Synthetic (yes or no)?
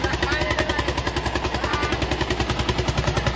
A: no